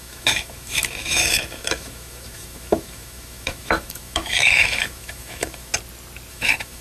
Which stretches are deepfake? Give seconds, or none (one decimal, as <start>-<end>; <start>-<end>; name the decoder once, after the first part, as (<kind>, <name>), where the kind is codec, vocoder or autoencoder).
0.0-5.7 (autoencoder, DAC-VAE); 6.3-6.8